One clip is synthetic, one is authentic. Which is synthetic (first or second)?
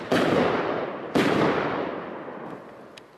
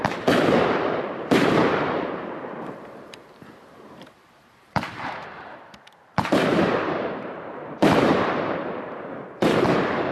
second